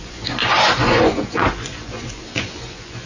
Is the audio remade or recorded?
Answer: remade